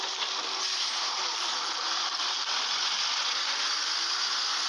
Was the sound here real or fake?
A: real